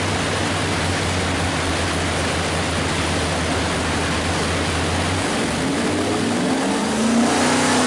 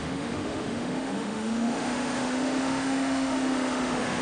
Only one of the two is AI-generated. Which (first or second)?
second